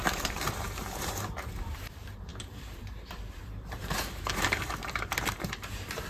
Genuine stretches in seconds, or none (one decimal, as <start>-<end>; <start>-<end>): none